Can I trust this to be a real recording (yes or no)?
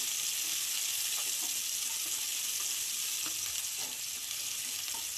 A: yes